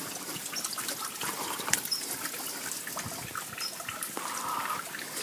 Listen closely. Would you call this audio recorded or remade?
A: recorded